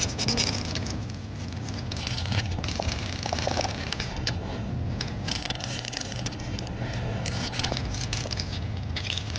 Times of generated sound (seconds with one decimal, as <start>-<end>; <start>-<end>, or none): 2.0-2.6; 4.1-4.7; 5.3-7.7